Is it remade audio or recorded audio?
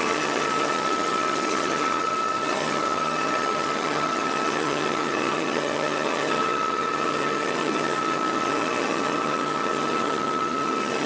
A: remade